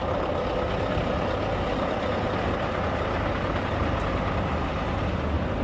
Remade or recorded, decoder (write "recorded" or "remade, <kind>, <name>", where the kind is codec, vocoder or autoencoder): recorded